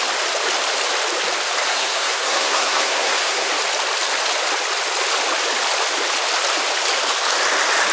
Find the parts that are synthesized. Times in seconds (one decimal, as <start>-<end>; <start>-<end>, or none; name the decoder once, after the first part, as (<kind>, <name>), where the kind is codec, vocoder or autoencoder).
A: 1.7-3.5 (codec, SNAC)